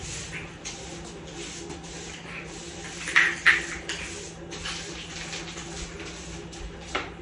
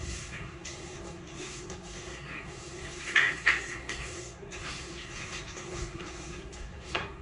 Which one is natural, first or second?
first